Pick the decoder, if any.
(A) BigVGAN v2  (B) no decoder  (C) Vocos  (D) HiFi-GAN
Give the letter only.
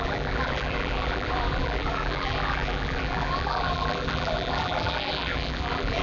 A